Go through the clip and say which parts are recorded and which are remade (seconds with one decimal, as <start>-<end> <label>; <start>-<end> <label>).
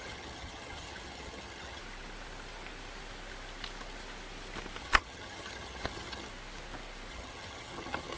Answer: 0.0-1.8 remade; 1.8-4.8 recorded; 4.8-6.3 remade; 6.3-7.1 recorded; 7.1-8.2 remade